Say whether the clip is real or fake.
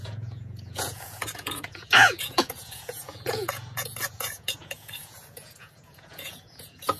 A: fake